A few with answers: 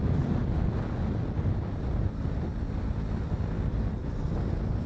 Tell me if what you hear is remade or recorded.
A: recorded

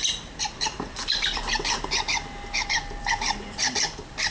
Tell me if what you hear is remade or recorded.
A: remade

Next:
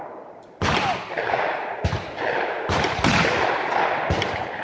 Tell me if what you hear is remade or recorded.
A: recorded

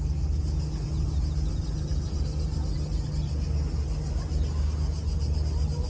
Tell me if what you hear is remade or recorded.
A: recorded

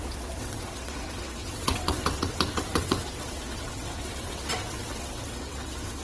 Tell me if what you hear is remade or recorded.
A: remade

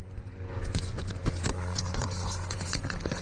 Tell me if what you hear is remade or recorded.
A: remade